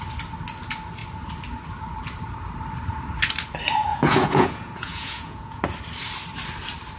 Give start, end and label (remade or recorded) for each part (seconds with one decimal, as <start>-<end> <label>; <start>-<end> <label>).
0.0-3.9 recorded; 3.9-5.6 remade; 5.6-7.0 recorded